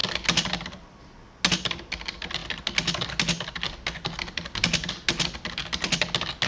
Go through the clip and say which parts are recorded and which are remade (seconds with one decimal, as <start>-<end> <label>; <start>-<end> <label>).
0.0-6.5 recorded